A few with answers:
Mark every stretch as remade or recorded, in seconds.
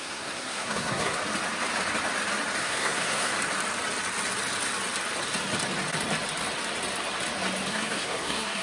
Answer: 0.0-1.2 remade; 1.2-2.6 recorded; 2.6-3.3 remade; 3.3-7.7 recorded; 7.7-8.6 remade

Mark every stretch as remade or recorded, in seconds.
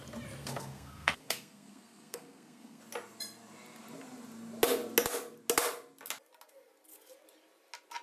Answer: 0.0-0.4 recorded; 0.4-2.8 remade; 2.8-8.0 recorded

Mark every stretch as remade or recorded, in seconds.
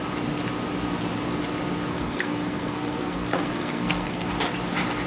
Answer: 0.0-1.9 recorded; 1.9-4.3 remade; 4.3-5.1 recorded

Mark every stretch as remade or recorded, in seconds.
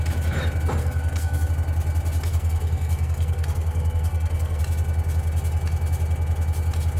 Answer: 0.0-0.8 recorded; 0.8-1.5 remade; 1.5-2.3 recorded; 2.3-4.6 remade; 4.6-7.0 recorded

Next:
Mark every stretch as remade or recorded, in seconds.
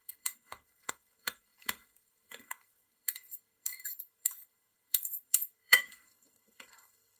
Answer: 0.0-7.2 remade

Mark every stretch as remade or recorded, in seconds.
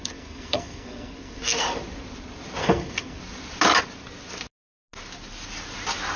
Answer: 0.0-1.8 remade; 1.8-2.6 recorded; 2.6-3.2 remade; 3.2-6.2 recorded